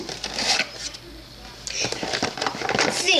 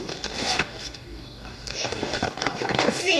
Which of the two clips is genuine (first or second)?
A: first